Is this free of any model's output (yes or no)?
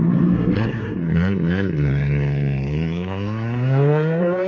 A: no